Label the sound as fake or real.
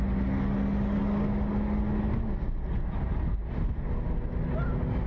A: real